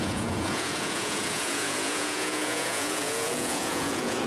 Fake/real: fake